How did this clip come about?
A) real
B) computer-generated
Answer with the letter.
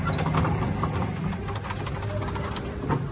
A